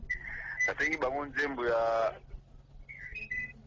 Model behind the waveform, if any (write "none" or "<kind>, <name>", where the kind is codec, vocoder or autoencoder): none